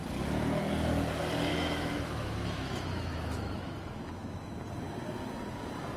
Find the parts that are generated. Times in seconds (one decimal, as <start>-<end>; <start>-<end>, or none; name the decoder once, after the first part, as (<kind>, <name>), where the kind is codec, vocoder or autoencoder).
1.5-4.5 (autoencoder, DAC-VAE)